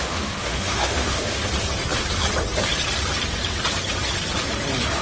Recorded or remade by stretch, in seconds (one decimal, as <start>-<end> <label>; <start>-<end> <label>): 0.0-1.4 remade; 1.4-5.0 recorded